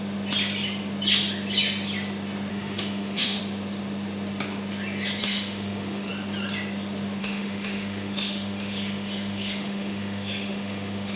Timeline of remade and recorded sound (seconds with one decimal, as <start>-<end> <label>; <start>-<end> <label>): 0.0-2.5 recorded; 2.5-3.4 remade; 3.4-5.2 recorded; 5.2-6.1 remade; 6.1-7.2 recorded; 7.2-11.2 remade